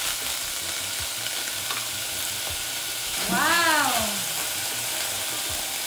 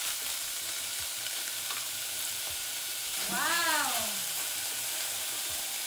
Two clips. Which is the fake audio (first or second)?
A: second